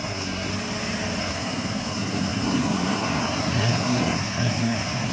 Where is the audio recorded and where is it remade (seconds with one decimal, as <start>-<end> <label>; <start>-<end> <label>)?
0.0-0.5 remade; 0.5-1.2 recorded; 1.2-5.1 remade